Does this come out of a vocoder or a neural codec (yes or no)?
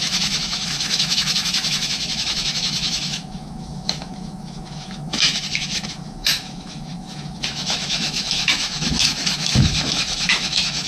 yes